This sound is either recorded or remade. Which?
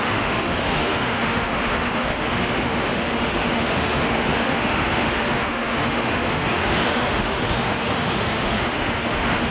remade